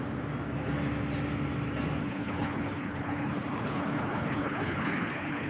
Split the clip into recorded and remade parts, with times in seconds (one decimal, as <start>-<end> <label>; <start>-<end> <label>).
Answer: 0.0-2.0 recorded; 2.0-5.5 remade